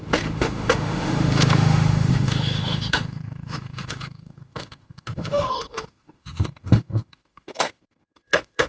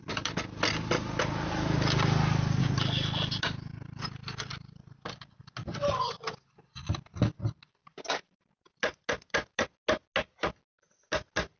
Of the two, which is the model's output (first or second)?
first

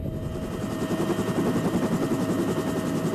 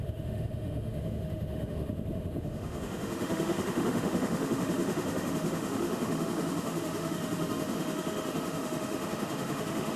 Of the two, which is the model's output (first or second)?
second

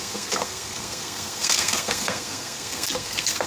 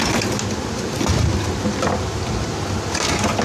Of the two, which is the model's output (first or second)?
first